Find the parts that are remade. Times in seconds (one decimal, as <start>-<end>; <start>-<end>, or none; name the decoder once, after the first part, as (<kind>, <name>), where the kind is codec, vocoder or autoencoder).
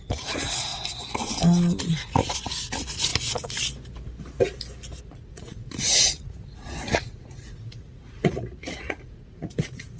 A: 0.0-0.7 (vocoder, Vocos); 1.8-3.1; 5.0-10.0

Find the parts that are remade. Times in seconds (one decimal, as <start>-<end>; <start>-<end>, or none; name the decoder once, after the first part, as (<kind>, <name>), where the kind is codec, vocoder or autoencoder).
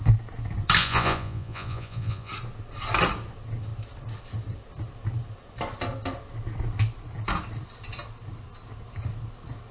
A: 0.8-2.3 (vocoder, Vocos)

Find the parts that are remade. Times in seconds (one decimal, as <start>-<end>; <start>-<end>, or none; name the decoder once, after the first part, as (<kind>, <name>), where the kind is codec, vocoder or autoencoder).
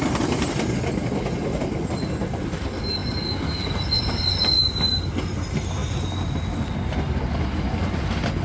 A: none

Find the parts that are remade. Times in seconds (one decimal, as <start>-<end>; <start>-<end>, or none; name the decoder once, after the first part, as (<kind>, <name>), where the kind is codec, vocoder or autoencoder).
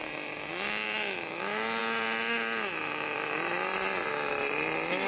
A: none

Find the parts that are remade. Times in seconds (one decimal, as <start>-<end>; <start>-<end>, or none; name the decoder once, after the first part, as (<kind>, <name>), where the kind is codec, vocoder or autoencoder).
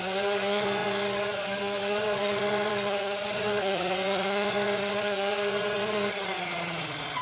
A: 0.0-7.2 (vocoder, Vocos)